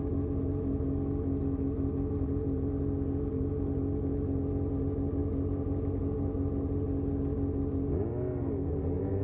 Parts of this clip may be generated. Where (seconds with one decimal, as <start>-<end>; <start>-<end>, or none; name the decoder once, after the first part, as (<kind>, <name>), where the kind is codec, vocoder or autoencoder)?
none